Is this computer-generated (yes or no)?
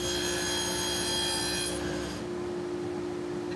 no